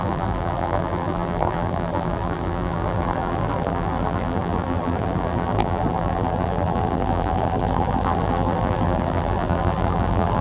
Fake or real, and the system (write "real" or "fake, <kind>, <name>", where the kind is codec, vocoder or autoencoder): fake, vocoder, BigVGAN v2